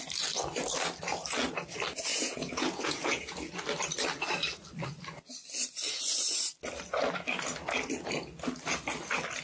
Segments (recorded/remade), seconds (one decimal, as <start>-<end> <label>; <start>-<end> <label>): 0.0-2.1 recorded; 2.1-3.5 remade; 3.5-9.4 recorded